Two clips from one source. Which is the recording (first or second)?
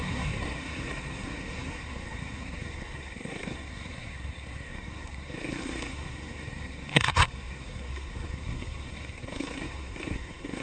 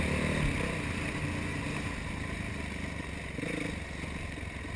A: second